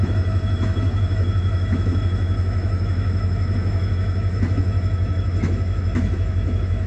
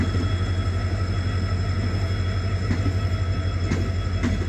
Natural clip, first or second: second